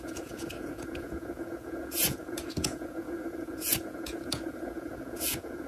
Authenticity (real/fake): fake